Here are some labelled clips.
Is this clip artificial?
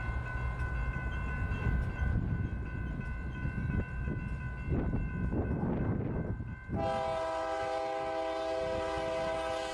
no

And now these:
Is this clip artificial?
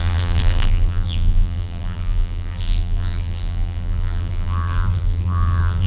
yes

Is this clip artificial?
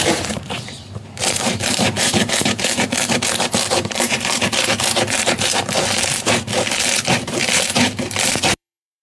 yes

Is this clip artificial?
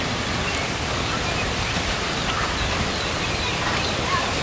no